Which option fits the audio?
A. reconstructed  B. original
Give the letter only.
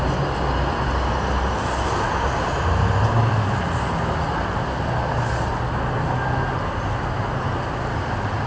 B